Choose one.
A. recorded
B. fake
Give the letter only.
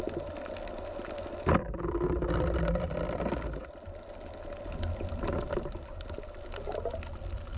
A